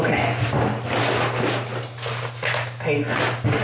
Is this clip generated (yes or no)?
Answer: no